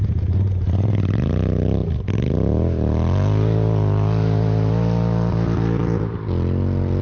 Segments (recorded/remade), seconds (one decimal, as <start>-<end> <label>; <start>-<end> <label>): 0.0-7.0 recorded

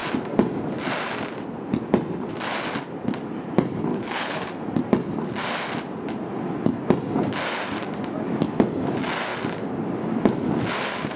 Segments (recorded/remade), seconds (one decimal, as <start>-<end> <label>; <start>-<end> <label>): 0.0-3.9 recorded; 3.9-4.5 remade; 4.5-11.2 recorded

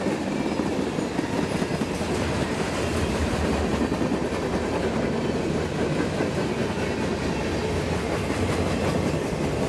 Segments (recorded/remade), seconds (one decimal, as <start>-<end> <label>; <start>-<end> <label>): 0.0-7.6 recorded; 7.6-9.7 remade

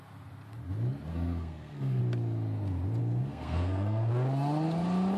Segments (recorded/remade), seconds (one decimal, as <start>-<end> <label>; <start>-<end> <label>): 0.0-1.1 recorded; 1.1-2.0 remade; 2.0-3.0 recorded; 3.0-4.1 remade; 4.1-5.2 recorded

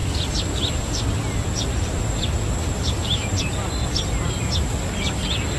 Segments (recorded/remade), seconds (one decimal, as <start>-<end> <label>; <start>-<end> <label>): 0.0-3.4 remade; 3.4-5.6 recorded

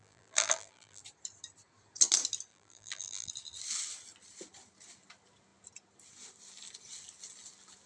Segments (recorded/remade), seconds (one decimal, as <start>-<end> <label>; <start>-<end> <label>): 0.0-1.0 remade; 1.0-2.5 recorded; 2.5-3.3 remade; 3.3-7.9 recorded